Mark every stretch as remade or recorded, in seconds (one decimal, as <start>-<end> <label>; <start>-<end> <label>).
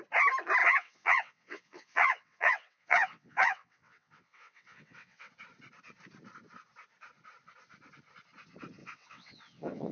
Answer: 0.0-0.6 recorded; 0.6-5.3 remade; 5.3-8.8 recorded; 8.8-9.9 remade